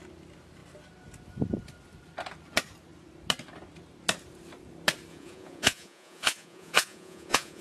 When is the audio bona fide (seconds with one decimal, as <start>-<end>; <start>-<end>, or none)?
0.0-5.1